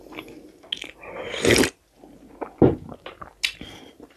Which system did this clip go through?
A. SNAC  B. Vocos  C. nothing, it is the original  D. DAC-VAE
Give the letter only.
C